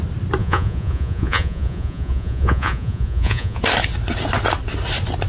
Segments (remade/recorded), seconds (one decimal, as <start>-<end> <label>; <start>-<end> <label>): 0.0-0.4 recorded; 0.4-3.6 remade; 3.6-5.3 recorded